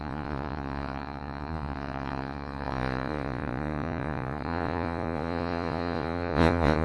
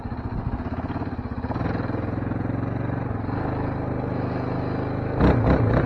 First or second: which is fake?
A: first